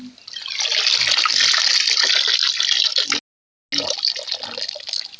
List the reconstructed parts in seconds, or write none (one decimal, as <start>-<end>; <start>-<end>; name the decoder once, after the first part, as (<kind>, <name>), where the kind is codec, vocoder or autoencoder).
none